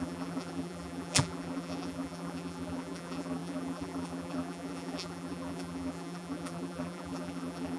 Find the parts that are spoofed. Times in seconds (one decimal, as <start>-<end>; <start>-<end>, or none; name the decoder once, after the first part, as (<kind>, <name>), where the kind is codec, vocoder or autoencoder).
0.0-7.8 (vocoder, BigVGAN v2)